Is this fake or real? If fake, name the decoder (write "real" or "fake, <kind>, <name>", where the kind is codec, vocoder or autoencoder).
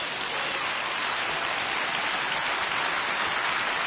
real